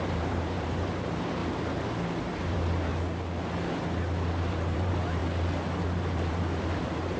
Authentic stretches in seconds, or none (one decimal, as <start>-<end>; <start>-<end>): 1.4-2.2; 2.9-4.5; 5.2-5.8